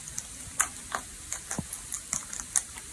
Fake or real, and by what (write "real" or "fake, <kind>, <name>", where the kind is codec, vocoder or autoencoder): real